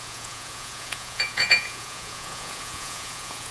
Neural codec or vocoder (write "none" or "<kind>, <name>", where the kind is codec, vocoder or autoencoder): vocoder, Vocos